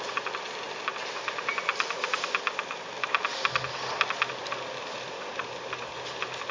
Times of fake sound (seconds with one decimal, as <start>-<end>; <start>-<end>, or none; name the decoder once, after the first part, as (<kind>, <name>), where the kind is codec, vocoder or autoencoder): none